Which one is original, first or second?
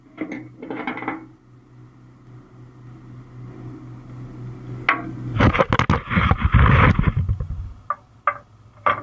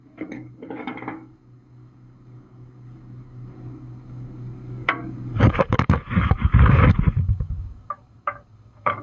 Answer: first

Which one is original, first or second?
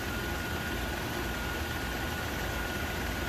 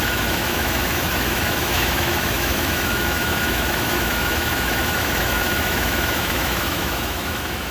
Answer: first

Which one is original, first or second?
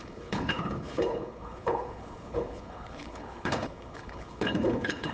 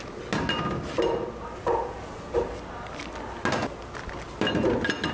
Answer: second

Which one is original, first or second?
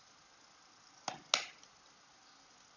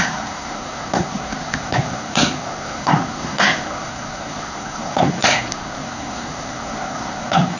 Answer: first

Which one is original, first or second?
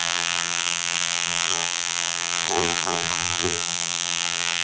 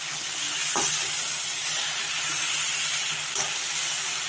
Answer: second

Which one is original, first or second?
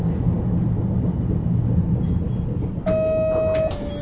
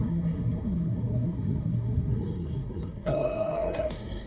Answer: first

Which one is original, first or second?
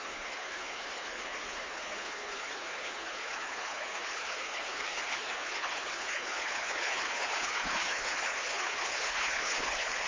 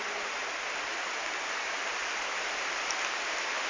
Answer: second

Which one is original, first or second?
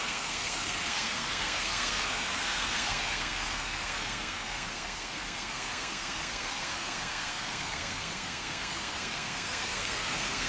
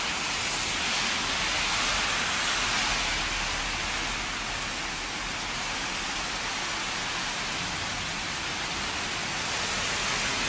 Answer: second